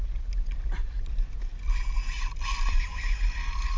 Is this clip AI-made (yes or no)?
no